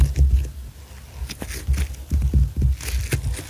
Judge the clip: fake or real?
real